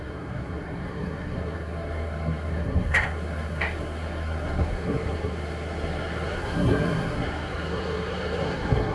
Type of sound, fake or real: fake